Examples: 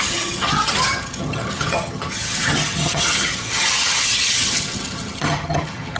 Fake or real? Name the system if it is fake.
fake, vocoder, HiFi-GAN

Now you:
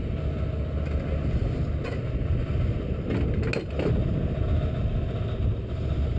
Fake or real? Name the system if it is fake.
real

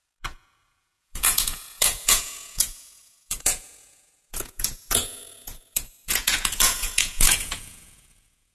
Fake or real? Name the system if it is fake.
fake, vocoder, Vocos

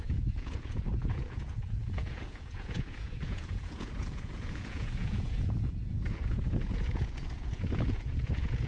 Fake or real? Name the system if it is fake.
fake, vocoder, Vocos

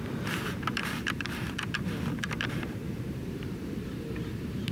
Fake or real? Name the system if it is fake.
fake, vocoder, BigVGAN v2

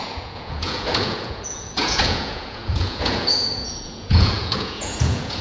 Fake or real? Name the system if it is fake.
fake, vocoder, Vocos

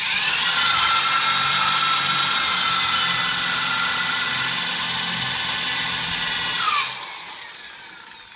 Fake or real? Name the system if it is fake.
real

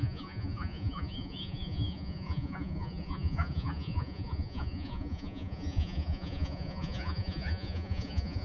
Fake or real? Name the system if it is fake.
fake, vocoder, Vocos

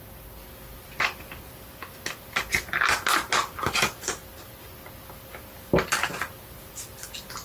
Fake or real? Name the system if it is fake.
real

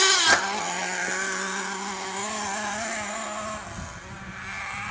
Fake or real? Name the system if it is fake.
real